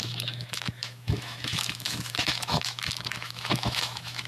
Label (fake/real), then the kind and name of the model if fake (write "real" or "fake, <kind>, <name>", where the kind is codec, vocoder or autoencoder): fake, autoencoder, DAC-VAE